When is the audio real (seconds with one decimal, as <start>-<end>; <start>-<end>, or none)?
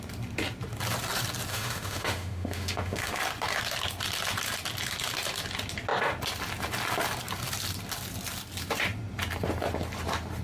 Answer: 0.0-1.5; 3.2-10.4